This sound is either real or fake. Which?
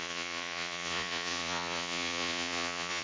fake